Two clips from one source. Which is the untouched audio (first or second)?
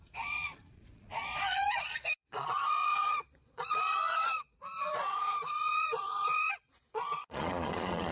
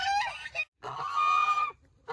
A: second